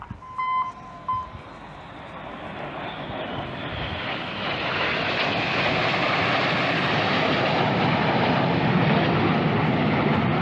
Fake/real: real